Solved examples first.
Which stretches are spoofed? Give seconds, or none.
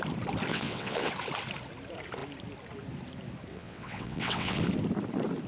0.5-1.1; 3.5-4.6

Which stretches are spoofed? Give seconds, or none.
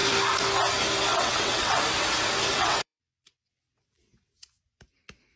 1.1-1.8; 2.5-4.6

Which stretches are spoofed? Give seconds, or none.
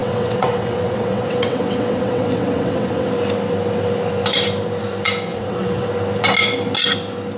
0.0-3.1; 5.3-5.9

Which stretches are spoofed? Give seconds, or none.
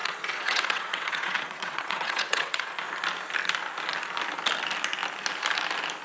0.0-2.7